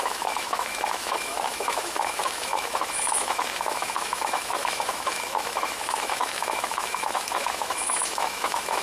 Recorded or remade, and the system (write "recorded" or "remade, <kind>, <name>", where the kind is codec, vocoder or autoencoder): remade, autoencoder, DAC-VAE